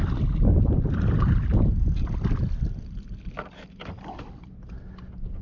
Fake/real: real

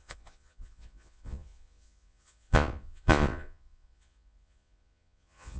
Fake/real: fake